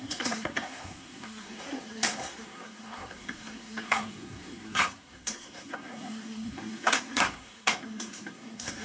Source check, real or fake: fake